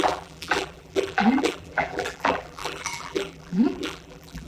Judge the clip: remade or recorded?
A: remade